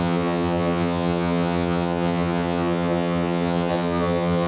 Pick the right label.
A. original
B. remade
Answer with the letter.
B